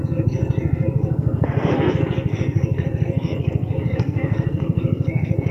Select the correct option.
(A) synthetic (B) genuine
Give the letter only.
A